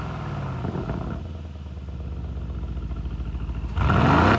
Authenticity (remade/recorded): recorded